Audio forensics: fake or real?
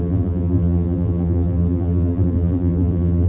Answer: fake